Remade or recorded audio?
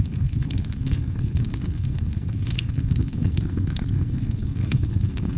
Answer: remade